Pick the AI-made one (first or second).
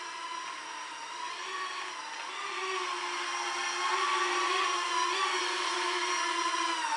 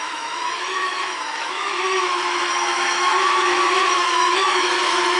second